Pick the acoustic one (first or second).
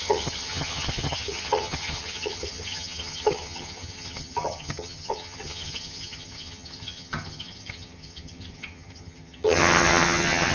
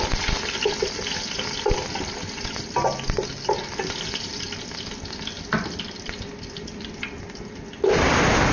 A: second